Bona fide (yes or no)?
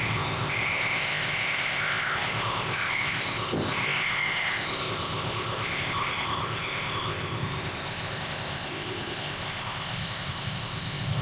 no